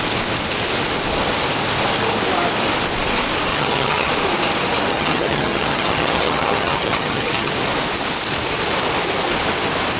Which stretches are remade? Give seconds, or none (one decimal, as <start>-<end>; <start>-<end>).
3.5-4.1; 4.9-7.5